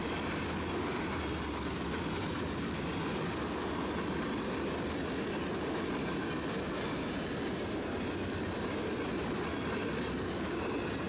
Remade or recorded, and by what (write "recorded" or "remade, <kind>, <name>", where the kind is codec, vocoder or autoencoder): recorded